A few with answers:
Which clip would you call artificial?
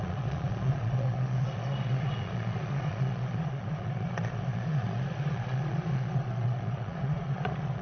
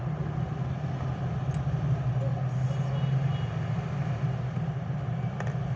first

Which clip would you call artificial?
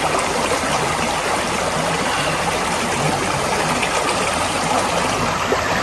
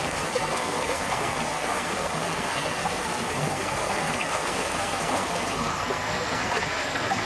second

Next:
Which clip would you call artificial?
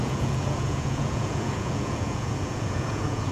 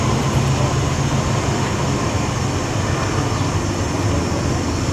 first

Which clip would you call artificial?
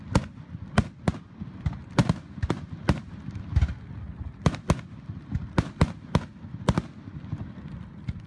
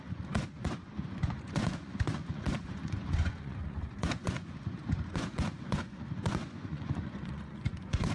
second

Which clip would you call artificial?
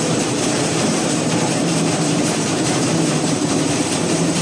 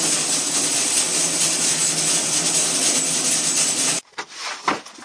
first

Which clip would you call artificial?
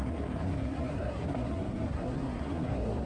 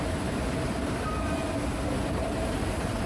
first